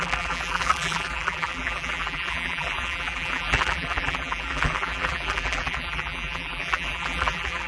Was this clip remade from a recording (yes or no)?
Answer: yes